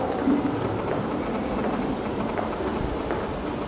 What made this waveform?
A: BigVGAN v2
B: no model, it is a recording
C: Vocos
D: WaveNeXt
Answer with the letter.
A